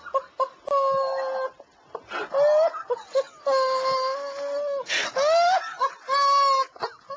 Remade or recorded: recorded